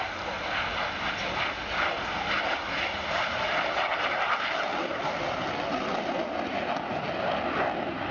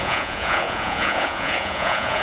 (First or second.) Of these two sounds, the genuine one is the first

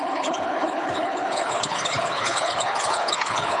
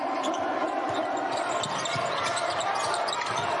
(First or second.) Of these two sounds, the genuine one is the second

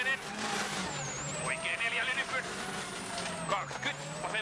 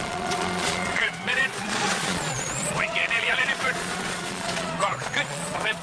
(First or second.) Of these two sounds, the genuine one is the first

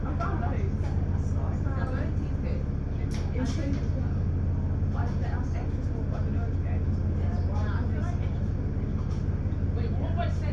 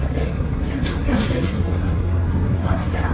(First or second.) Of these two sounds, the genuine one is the first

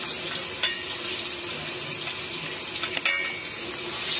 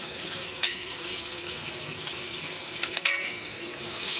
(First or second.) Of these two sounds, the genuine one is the first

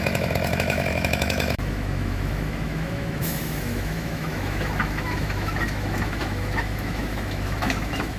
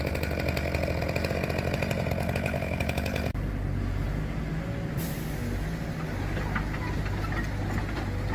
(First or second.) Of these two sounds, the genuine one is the second